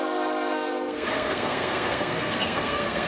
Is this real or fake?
fake